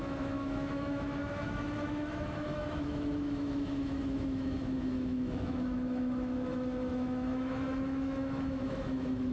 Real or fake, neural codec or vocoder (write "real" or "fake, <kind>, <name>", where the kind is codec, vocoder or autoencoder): fake, autoencoder, DAC-VAE